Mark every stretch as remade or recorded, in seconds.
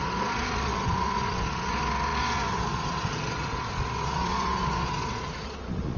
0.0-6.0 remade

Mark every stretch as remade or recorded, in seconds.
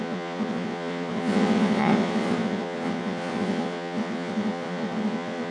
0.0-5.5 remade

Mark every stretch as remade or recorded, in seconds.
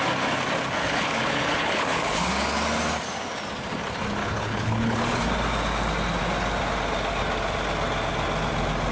0.0-0.8 recorded; 0.8-2.3 remade; 2.3-4.2 recorded; 4.2-5.2 remade; 5.2-8.9 recorded